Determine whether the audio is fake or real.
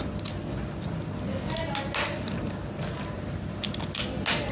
real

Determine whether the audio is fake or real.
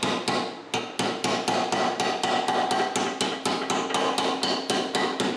real